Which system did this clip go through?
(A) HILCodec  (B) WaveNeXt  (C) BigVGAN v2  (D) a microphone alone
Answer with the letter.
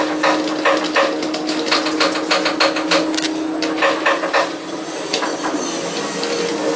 D